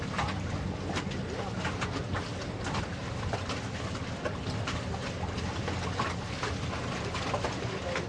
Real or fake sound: real